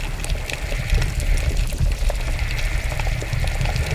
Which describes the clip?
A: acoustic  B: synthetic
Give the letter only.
A